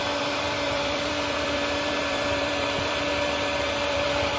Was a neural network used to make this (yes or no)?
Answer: yes